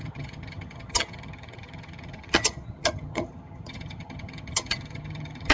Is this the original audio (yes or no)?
no